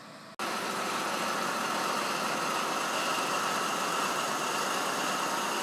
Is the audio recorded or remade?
recorded